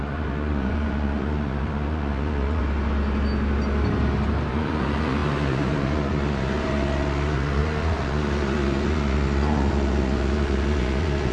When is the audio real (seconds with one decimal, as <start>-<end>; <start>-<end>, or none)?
2.6-4.5